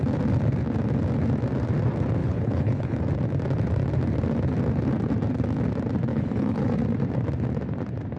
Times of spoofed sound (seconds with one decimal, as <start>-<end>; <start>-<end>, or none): 2.2-3.0; 6.1-6.7